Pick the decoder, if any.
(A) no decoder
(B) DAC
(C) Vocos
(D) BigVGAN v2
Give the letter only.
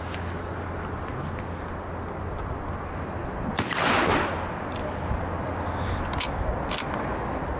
A